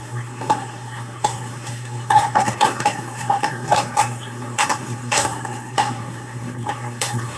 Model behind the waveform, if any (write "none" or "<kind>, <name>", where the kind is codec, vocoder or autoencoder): codec, SNAC